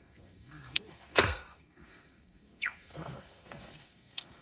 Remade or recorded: remade